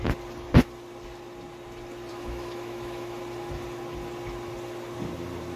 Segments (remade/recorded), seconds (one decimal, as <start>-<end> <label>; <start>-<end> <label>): 0.0-2.1 recorded; 2.1-3.2 remade; 3.2-5.6 recorded